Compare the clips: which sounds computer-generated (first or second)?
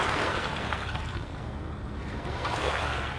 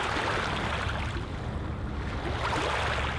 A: first